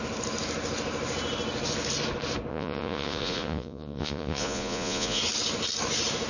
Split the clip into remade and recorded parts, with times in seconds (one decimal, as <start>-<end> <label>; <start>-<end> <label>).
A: 0.0-2.5 recorded; 2.5-5.2 remade; 5.2-6.3 recorded